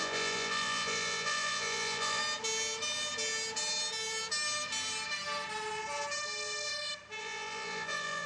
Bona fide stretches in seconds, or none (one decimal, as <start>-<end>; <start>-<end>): 2.2-7.2

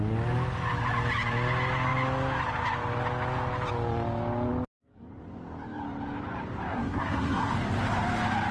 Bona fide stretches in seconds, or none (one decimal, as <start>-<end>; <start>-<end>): 0.0-6.7; 7.5-8.5